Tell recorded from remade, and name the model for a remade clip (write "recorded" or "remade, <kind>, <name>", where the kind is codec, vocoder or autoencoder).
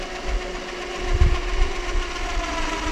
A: recorded